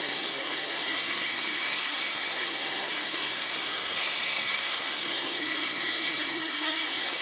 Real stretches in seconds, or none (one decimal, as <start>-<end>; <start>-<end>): none